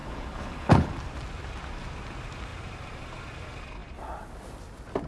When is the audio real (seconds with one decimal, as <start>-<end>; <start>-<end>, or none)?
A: 0.9-5.1